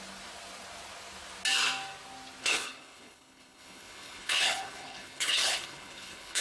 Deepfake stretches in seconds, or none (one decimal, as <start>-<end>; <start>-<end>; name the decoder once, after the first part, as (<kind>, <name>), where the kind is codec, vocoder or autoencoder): 2.4-6.4 (codec, HILCodec)